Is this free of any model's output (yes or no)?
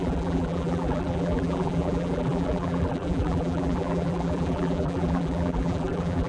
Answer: no